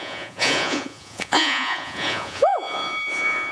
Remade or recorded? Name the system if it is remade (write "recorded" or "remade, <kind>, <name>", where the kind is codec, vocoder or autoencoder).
remade, vocoder, Vocos